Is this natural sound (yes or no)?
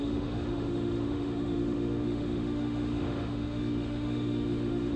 no